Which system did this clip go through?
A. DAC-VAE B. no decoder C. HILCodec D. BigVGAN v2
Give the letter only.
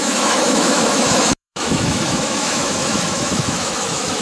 A